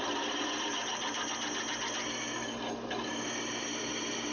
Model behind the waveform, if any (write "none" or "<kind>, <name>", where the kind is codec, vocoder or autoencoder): none